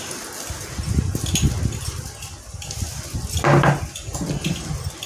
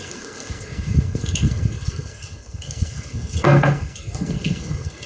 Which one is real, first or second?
first